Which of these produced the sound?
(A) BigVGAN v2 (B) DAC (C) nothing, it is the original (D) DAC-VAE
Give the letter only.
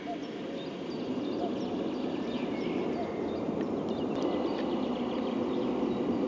C